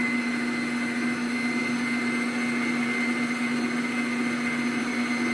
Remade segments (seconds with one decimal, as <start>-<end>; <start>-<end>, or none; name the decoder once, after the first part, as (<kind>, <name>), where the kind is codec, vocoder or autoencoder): none

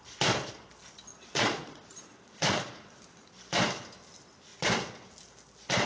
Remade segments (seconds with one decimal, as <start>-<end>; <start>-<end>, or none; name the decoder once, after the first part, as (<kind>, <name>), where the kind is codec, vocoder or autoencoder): 1.1-3.3 (vocoder, Vocos)

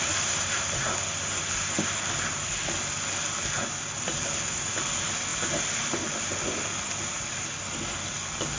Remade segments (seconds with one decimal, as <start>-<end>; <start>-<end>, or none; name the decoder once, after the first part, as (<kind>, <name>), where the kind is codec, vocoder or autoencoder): none

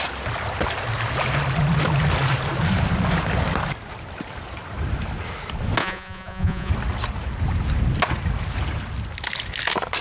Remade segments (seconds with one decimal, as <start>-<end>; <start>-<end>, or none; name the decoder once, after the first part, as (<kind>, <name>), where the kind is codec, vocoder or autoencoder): 5.8-6.7 (vocoder, Vocos)

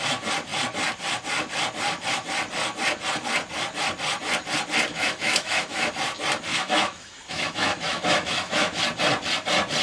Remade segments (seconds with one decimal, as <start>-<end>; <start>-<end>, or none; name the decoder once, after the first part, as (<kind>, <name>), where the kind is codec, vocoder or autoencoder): 4.9-5.9 (autoencoder, DAC-VAE); 6.5-8.8

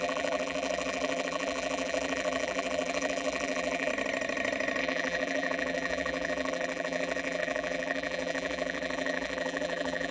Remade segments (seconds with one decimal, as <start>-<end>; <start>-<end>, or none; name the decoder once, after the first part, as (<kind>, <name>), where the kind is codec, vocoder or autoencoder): 0.0-3.9 (vocoder, BigVGAN v2); 4.8-10.1

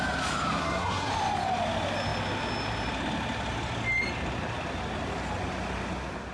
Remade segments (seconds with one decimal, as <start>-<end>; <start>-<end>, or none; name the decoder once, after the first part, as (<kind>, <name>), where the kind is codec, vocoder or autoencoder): 0.6-1.1 (codec, SNAC)

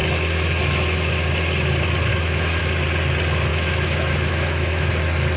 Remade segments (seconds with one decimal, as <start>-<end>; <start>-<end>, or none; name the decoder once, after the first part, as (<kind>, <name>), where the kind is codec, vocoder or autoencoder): 2.1-2.6 (autoencoder, DAC-VAE); 3.5-4.9